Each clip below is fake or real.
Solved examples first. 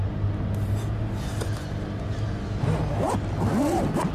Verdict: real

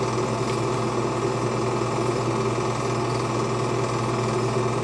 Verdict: real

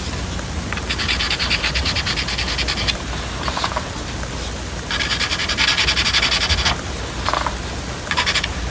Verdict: real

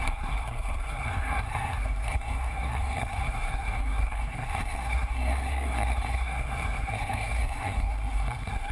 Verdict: fake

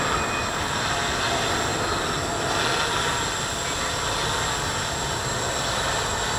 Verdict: real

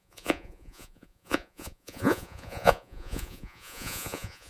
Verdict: fake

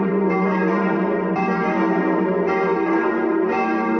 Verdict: fake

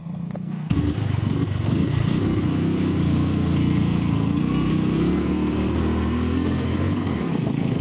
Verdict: fake